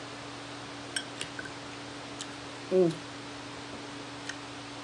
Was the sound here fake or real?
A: real